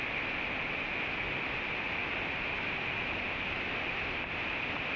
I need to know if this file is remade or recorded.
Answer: recorded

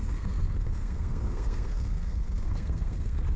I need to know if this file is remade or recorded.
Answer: remade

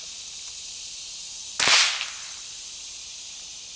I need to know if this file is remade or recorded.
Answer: recorded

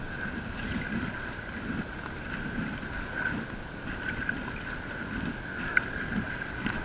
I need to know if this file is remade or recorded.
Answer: recorded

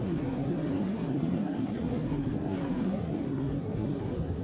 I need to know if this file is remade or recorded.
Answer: remade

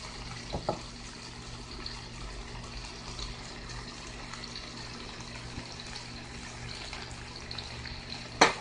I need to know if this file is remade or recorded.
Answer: recorded